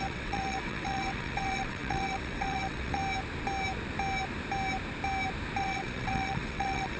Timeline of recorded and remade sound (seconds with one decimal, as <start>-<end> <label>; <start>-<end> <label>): 0.0-3.0 remade; 3.0-5.6 recorded; 5.6-7.0 remade